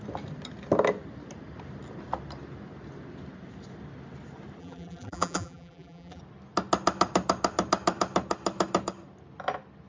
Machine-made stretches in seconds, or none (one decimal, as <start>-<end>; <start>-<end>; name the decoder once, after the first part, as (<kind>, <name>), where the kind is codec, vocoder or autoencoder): 4.6-6.2 (vocoder, BigVGAN v2)